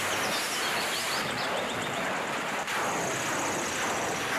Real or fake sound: real